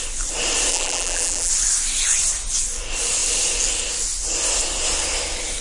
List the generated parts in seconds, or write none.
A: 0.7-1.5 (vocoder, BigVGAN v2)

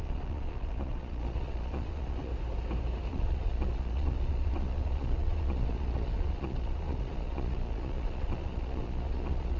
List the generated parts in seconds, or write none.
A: 0.0-2.3 (vocoder, Vocos); 3.1-9.6

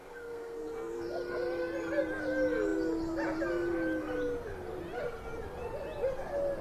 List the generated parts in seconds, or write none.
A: 0.0-1.1 (codec, SNAC)